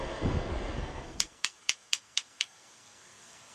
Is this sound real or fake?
fake